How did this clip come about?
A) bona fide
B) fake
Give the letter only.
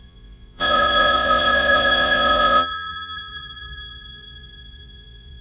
B